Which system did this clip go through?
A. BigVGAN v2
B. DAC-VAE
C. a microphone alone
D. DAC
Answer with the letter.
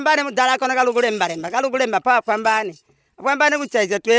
C